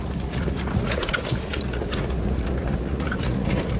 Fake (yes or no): yes